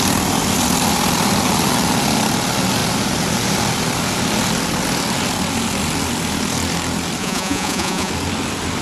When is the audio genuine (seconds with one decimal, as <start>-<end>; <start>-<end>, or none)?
0.0-7.2; 8.1-8.8